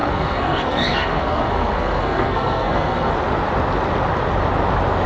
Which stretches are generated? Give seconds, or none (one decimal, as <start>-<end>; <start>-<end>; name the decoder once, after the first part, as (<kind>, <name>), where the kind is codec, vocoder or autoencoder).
0.0-3.1 (codec, SNAC)